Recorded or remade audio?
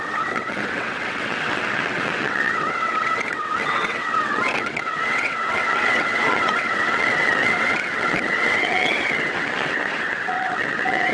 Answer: remade